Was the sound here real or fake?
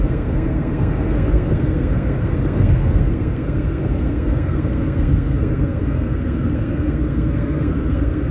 fake